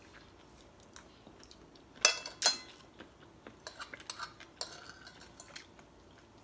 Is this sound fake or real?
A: real